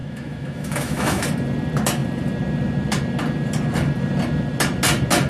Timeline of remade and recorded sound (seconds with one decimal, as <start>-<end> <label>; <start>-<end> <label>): 0.0-1.2 remade; 1.2-5.3 recorded